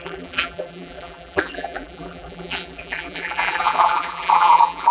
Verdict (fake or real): fake